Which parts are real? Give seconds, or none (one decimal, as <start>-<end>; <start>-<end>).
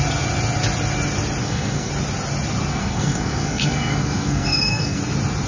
0.0-1.4; 1.9-2.7; 5.0-5.5